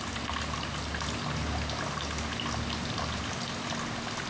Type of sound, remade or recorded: recorded